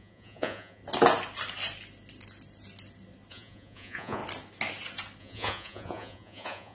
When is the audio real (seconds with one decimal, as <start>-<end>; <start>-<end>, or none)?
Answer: 0.8-3.3; 4.2-5.2